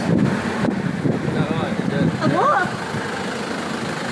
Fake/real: real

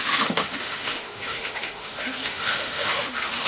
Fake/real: fake